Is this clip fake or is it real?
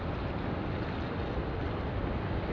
real